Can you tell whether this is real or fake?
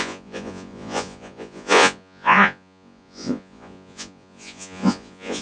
fake